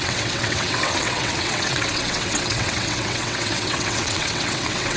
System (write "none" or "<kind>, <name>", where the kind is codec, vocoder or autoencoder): vocoder, WaveNeXt